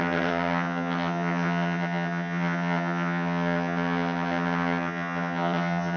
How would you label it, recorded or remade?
remade